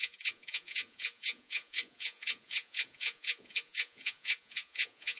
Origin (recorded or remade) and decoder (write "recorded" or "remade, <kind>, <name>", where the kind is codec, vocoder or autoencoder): remade, vocoder, Vocos